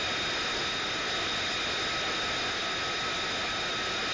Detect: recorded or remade recorded